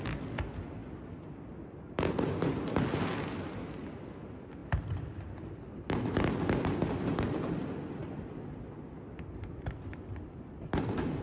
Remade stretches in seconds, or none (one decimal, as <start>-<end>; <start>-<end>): none